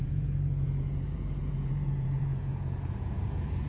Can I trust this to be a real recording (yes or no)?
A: no